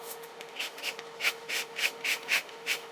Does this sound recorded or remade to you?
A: remade